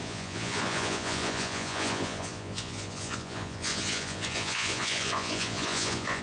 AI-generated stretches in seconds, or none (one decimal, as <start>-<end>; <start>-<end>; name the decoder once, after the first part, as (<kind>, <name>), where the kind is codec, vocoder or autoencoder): 0.0-6.2 (vocoder, Vocos)